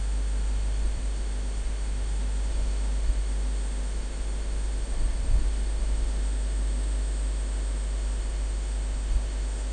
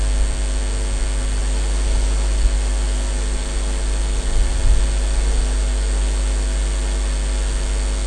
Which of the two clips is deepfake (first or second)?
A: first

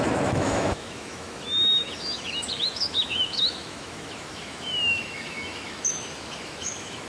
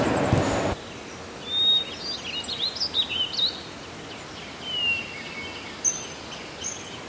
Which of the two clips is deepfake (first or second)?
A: first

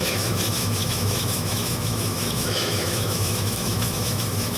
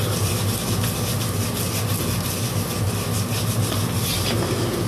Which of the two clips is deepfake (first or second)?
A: first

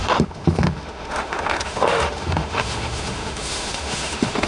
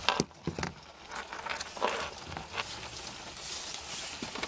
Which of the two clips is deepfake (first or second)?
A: first